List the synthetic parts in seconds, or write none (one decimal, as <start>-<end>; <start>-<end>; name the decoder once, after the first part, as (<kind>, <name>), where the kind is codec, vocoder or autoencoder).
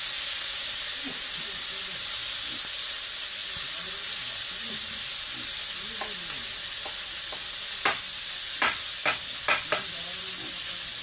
none